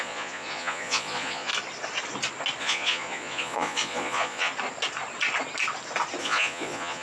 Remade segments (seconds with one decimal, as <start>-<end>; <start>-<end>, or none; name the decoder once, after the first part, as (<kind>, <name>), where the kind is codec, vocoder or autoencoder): 0.0-1.5 (vocoder, Vocos); 2.6-4.5; 6.2-7.0